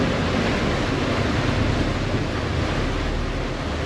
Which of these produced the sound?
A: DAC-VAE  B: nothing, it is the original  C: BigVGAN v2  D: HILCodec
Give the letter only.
B